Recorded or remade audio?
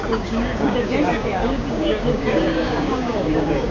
remade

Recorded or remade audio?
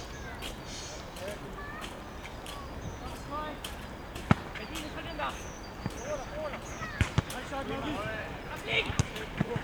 recorded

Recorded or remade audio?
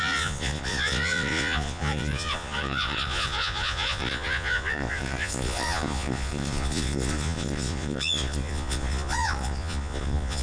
remade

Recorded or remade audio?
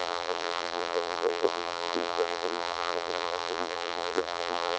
remade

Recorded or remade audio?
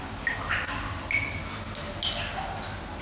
recorded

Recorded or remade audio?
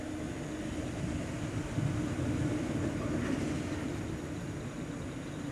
recorded